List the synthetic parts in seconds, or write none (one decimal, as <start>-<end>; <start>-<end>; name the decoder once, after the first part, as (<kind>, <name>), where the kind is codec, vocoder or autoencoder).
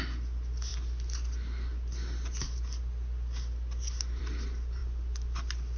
none